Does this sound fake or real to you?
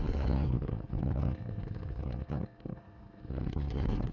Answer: fake